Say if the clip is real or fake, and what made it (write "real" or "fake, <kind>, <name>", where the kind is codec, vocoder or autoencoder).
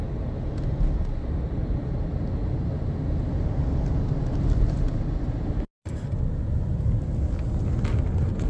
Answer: real